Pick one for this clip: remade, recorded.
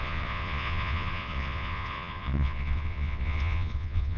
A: remade